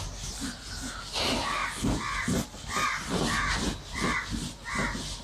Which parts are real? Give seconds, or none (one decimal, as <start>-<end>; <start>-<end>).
0.0-5.2